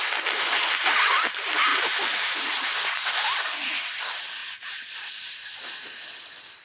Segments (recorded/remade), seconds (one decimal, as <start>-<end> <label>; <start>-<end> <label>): 0.0-6.6 recorded